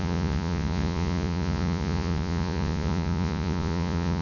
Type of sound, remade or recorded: remade